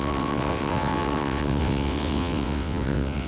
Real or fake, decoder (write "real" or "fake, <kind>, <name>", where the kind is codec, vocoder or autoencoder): fake, vocoder, WaveNeXt